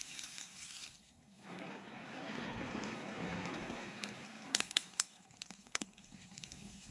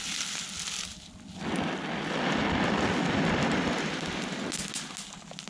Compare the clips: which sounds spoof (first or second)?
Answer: first